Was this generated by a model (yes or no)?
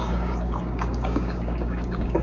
yes